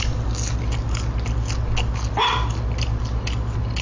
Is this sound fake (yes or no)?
no